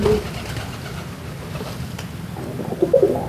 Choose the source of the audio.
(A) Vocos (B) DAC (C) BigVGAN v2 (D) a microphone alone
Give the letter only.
D